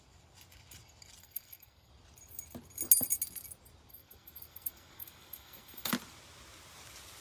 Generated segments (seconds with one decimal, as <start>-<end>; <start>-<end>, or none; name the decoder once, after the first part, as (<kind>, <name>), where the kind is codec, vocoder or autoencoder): 1.2-1.9 (codec, SNAC); 3.9-5.9